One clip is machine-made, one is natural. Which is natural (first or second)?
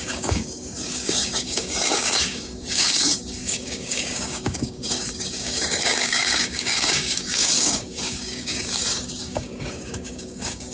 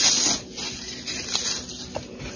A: second